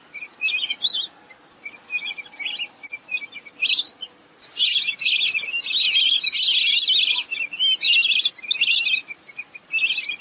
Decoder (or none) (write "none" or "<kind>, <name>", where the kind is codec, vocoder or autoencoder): none